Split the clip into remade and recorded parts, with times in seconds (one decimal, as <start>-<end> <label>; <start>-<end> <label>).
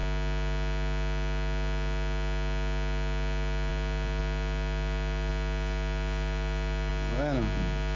0.0-8.0 recorded